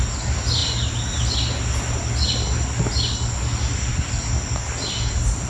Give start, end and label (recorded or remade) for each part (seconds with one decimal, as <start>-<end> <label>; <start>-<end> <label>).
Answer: 0.0-5.5 recorded